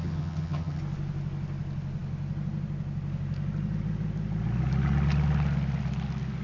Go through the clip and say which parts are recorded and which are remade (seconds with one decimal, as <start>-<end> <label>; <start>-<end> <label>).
0.0-0.8 remade; 0.8-6.4 recorded